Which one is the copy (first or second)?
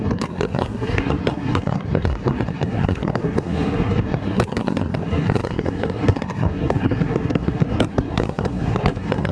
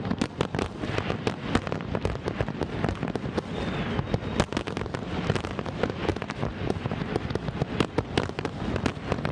first